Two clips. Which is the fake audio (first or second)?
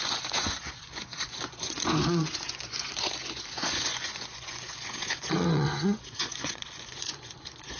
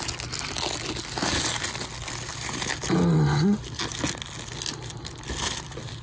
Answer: first